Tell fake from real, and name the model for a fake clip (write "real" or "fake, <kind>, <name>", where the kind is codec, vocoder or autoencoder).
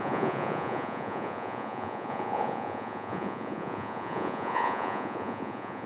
fake, vocoder, Vocos